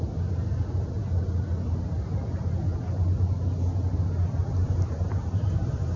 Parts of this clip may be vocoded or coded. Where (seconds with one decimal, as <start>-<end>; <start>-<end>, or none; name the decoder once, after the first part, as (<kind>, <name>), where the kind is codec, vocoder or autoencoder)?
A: 4.6-6.0 (vocoder, BigVGAN v2)

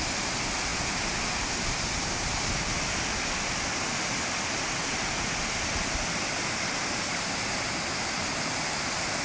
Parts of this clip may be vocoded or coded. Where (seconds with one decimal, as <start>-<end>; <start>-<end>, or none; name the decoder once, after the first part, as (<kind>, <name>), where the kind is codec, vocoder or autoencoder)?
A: none

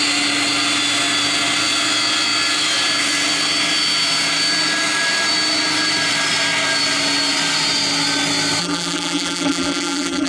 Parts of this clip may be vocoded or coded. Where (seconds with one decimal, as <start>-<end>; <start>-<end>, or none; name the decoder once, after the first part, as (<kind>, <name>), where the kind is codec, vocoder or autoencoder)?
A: 8.6-10.3 (vocoder, BigVGAN v2)

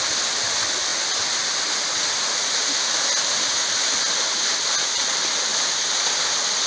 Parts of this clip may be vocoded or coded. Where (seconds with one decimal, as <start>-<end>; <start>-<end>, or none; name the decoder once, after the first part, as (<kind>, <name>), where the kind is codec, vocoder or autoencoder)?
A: none

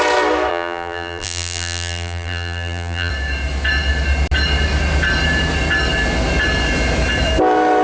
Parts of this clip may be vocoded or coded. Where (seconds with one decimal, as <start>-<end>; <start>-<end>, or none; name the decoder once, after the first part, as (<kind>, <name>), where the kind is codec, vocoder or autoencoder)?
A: 0.5-3.1 (vocoder, BigVGAN v2)